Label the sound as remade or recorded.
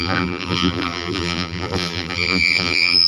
remade